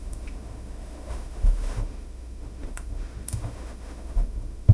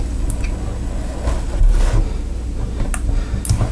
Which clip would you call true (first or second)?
second